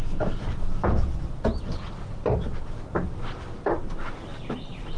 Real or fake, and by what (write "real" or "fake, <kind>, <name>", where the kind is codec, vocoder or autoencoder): real